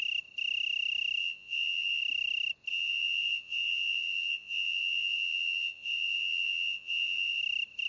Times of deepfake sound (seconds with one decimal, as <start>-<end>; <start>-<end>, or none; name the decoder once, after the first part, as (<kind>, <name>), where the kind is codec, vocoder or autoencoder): 1.2-2.0 (vocoder, Vocos); 2.7-7.4